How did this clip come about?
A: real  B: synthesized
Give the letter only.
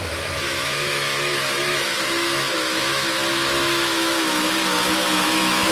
B